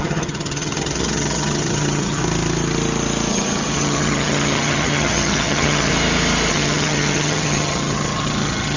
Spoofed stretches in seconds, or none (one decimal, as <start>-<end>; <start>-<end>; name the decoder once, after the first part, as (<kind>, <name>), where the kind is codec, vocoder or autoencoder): 0.0-2.2 (vocoder, HiFi-GAN); 3.3-5.9; 6.5-8.8